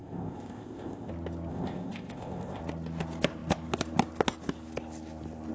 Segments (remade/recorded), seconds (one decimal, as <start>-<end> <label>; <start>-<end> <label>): 0.0-1.1 remade; 1.1-1.5 recorded; 1.5-2.6 remade; 2.6-5.5 recorded